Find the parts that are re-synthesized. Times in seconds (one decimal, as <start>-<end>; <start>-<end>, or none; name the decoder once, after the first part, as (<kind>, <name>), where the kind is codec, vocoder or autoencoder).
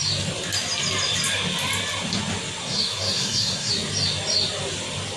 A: 2.6-3.7 (codec, SNAC)